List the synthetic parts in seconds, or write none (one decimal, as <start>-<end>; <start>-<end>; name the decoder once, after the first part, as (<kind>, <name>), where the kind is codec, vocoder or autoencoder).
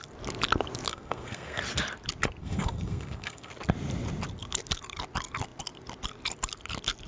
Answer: 0.9-1.6 (codec, SNAC); 2.4-3.5